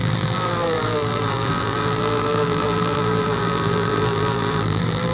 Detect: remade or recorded remade